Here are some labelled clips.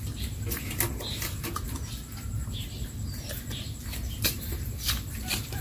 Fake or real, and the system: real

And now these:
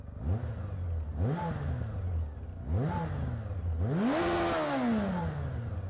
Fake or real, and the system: real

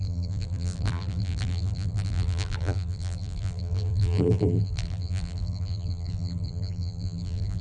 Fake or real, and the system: fake, vocoder, BigVGAN v2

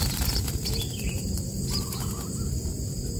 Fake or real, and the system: real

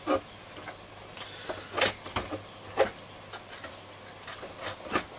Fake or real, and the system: real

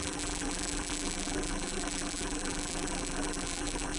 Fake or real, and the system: fake, vocoder, BigVGAN v2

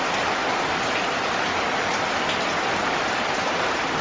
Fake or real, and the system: real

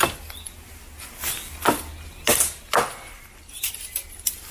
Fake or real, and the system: real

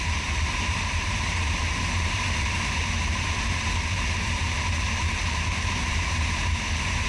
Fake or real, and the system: fake, vocoder, BigVGAN v2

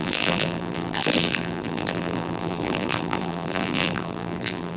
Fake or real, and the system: fake, vocoder, BigVGAN v2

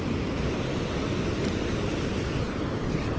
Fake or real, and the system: real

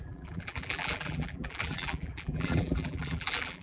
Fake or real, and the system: fake, vocoder, BigVGAN v2